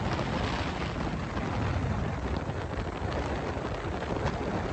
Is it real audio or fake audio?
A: real